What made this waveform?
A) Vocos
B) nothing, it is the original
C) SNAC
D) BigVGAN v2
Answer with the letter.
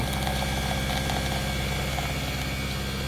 B